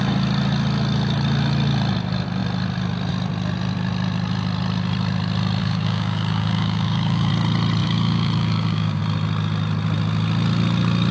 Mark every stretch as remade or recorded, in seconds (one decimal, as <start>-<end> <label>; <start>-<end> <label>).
0.0-5.6 recorded; 5.6-7.3 remade; 7.3-7.8 recorded; 7.8-9.0 remade; 9.0-11.1 recorded